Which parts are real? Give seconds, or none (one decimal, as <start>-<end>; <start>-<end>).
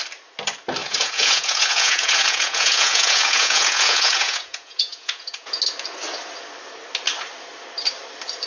0.0-0.8; 5.6-8.5